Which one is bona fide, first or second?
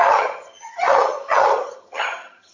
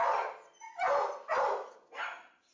second